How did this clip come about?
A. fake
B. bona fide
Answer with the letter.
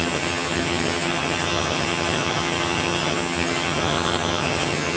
A